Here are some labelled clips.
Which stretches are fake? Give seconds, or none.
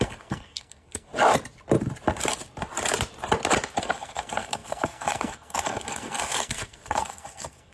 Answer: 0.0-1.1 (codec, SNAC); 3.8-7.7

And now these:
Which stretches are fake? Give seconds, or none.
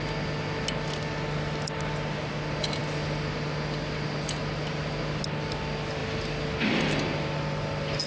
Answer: none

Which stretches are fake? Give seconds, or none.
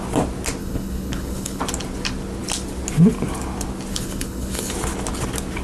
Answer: 0.6-1.6 (codec, HILCodec); 3.9-4.7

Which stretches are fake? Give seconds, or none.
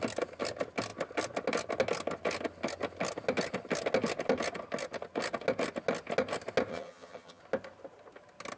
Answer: 6.7-7.4 (vocoder, HiFi-GAN)